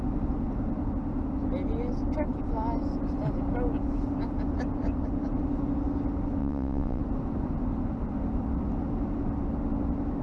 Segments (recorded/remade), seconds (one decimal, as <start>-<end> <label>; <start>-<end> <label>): 0.0-6.4 recorded; 6.4-7.0 remade; 7.0-10.2 recorded